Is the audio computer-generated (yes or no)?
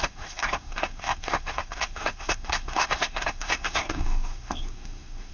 yes